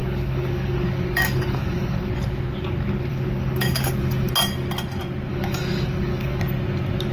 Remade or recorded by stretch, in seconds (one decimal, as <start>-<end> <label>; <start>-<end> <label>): 0.0-2.1 remade; 2.1-3.1 recorded; 3.1-4.3 remade; 4.3-5.3 recorded; 5.3-6.4 remade; 6.4-7.1 recorded